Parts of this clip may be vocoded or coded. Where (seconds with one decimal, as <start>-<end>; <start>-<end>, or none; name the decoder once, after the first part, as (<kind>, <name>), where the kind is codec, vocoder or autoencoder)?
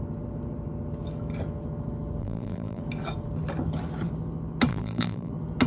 2.2-2.8 (vocoder, BigVGAN v2); 4.7-5.3